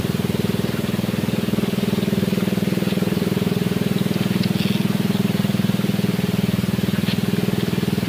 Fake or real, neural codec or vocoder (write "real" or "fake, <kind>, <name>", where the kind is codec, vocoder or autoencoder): real